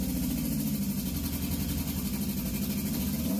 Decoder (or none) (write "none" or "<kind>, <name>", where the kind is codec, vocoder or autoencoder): none